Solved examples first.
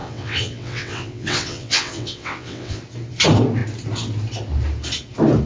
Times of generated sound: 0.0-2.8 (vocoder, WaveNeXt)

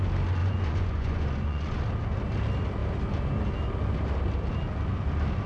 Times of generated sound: 0.4-1.8 (vocoder, Vocos)

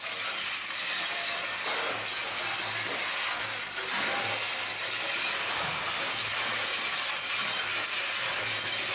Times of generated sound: none

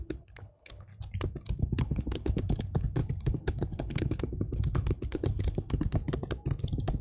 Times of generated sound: 0.0-0.9 (codec, HILCodec); 1.6-6.0

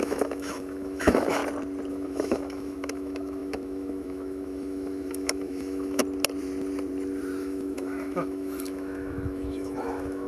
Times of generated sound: 0.0-1.4 (autoencoder, DAC-VAE); 1.9-6.0; 7.4-10.3

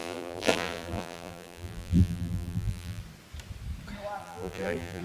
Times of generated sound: 0.0-3.0 (vocoder, BigVGAN v2); 4.2-5.0

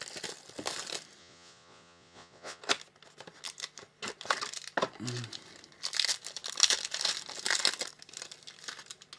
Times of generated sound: 1.2-2.6 (vocoder, Vocos)